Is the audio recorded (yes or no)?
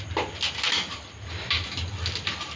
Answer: yes